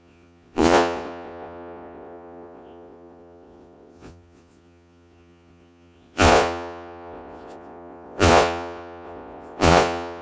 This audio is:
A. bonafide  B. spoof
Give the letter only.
B